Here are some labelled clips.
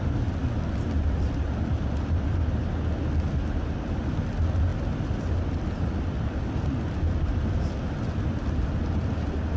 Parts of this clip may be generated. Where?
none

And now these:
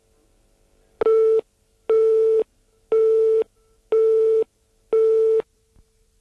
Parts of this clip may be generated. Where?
none

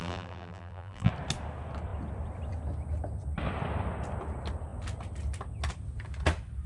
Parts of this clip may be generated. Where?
0.0-1.1

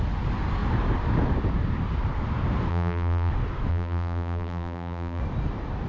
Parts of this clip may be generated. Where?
2.7-3.3; 3.7-5.2

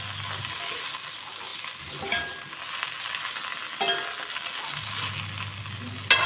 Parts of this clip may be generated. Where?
none

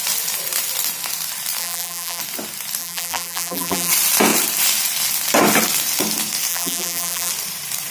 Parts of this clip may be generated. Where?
1.6-2.2; 2.8-3.9; 6.5-7.3

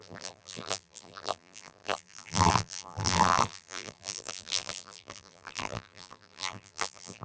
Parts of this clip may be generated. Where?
0.0-7.2

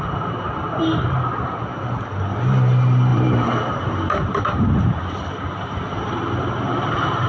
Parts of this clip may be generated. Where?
0.6-1.6; 3.1-7.3